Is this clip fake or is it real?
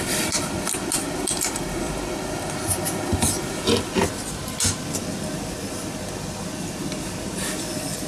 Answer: real